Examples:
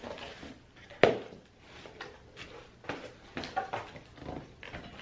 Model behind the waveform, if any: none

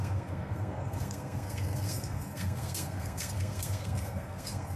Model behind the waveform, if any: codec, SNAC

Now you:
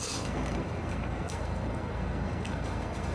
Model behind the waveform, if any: codec, SNAC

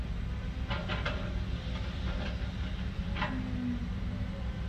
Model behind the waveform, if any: none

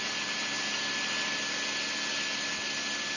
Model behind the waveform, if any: none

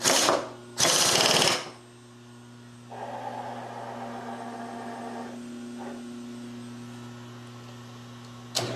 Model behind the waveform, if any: none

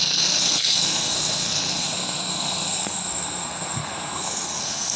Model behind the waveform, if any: codec, SNAC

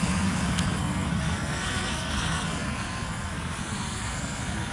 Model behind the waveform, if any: codec, SNAC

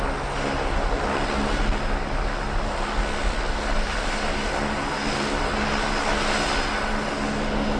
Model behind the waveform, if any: none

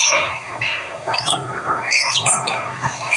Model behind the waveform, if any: codec, SNAC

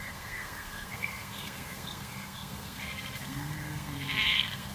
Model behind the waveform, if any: codec, SNAC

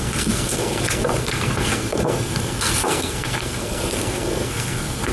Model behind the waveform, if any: codec, SNAC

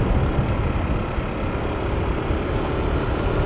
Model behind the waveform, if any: none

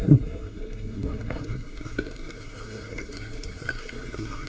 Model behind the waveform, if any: codec, SNAC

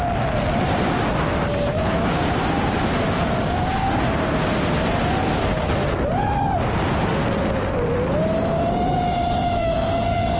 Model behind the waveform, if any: none